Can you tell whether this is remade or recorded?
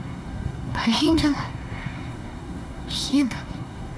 remade